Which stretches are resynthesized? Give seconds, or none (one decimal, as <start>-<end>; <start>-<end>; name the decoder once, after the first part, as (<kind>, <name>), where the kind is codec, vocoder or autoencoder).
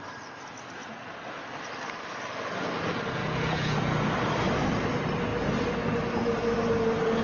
3.2-4.1 (vocoder, Vocos)